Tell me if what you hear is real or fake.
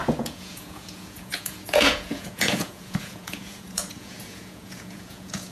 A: fake